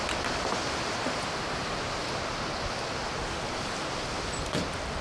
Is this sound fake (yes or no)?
no